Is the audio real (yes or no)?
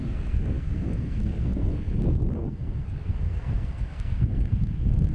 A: no